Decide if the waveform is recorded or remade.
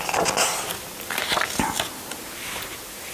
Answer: recorded